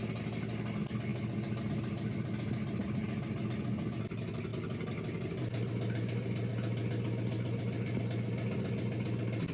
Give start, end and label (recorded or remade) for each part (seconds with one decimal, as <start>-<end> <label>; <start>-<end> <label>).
0.0-9.5 recorded